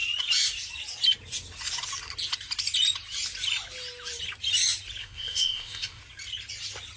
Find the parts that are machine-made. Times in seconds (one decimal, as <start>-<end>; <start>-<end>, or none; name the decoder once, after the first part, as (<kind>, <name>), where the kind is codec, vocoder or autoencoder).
5.0-6.0 (codec, ZipCodec)